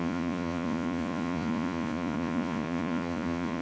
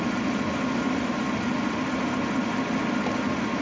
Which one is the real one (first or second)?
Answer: second